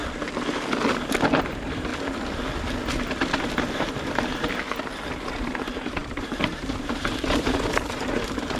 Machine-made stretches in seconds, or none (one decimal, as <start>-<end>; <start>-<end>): 1.4-1.9; 5.1-8.6